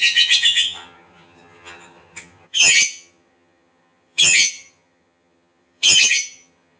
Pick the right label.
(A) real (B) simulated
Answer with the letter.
B